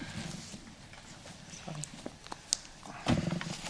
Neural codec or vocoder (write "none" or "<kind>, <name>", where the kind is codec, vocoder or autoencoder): none